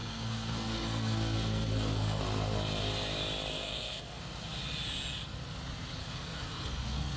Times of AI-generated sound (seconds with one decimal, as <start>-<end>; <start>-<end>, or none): 0.0-2.2; 3.5-4.2; 6.0-7.2